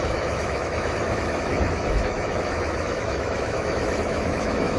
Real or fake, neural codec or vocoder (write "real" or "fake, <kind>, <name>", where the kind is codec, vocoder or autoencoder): fake, autoencoder, DAC-VAE